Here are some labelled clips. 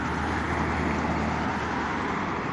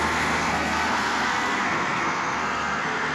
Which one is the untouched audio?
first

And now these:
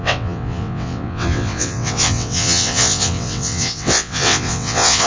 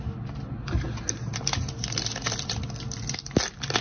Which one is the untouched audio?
second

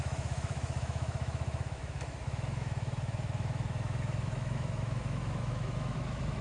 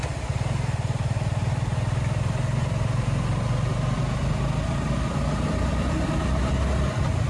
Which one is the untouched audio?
second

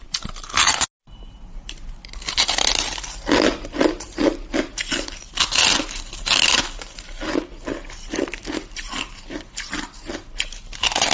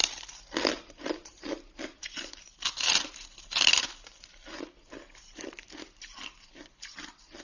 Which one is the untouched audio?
first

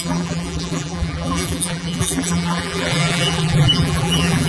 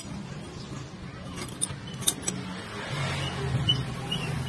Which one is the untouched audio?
second